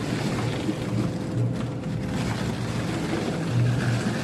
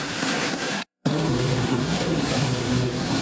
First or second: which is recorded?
first